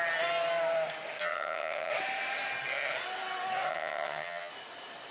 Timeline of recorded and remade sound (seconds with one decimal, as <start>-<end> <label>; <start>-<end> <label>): 0.0-1.2 recorded; 1.2-1.9 remade; 1.9-3.7 recorded; 3.7-4.5 remade; 4.5-5.1 recorded